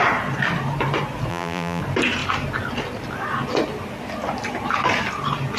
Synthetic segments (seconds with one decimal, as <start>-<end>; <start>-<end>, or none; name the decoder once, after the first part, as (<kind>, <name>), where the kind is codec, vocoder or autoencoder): 1.3-1.8 (vocoder, BigVGAN v2)